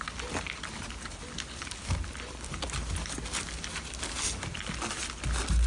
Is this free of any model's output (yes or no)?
yes